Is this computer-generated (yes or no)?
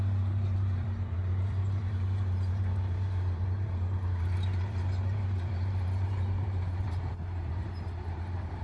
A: yes